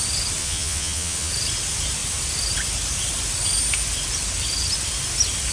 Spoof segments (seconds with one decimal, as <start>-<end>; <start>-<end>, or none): 0.4-1.3

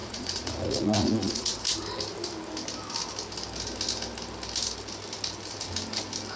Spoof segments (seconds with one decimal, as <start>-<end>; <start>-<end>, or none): 0.0-1.6

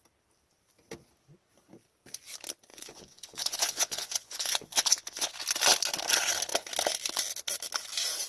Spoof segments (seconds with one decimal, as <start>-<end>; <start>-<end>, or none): 2.7-5.3

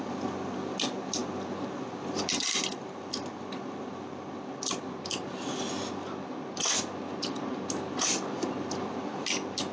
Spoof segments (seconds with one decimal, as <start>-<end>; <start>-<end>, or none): none

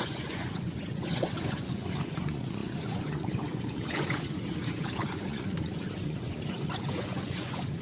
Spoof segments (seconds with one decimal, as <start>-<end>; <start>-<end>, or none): 0.0-7.8

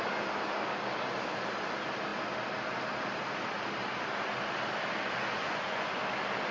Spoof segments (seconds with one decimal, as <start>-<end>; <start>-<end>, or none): 5.4-6.0

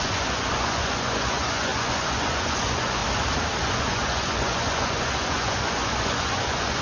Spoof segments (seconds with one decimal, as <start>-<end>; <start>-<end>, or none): 0.0-3.0; 3.6-6.8